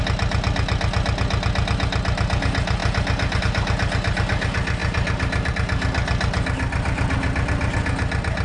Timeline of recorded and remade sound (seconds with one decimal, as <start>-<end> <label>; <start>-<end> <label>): 0.0-8.4 recorded